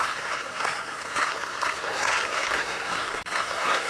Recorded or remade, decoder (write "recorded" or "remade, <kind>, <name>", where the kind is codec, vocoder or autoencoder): remade, codec, SNAC